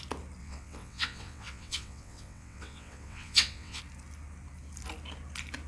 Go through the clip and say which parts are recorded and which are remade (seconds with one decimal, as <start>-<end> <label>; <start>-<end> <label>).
0.0-0.4 recorded; 0.4-3.8 remade; 3.8-5.7 recorded